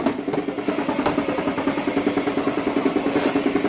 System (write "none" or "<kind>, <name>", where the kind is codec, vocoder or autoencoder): none